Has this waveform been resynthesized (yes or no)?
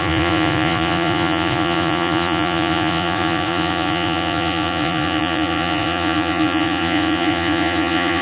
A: yes